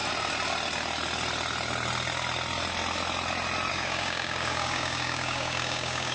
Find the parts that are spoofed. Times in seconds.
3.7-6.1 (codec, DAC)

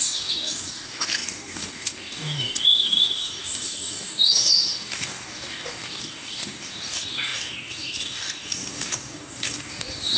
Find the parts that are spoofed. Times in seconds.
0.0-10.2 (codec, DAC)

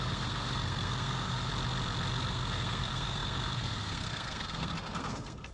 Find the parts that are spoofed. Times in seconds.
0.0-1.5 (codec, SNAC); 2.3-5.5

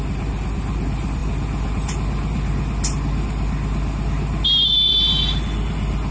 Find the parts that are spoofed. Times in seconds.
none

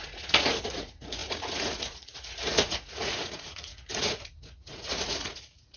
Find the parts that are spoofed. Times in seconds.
0.0-5.8 (vocoder, Vocos)

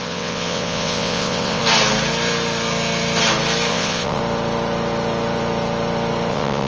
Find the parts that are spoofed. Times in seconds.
0.0-1.6 (vocoder, WaveNeXt); 3.7-4.2; 6.3-6.7

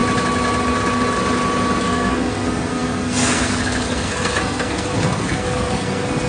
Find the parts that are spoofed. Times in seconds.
1.8-6.3 (codec, SNAC)

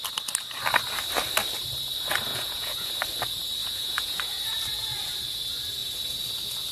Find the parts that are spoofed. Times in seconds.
2.3-2.9 (vocoder, Vocos); 3.6-4.2